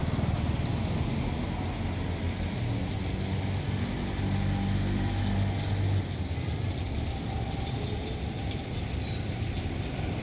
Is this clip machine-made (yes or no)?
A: no